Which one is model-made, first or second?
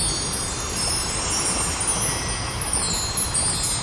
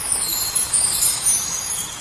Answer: second